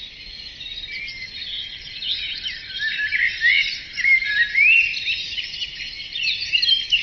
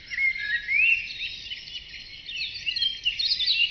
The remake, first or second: first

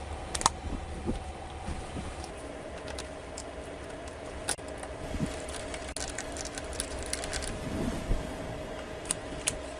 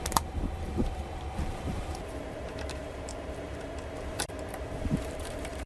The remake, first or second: second